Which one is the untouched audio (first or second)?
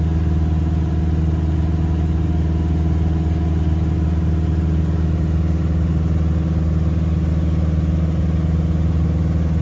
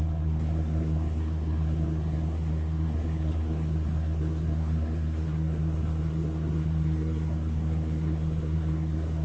first